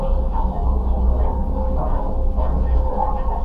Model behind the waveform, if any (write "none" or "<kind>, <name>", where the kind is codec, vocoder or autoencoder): codec, DAC